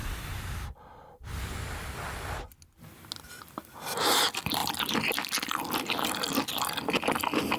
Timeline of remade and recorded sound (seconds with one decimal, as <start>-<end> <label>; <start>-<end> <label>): 0.0-1.6 remade; 1.6-7.6 recorded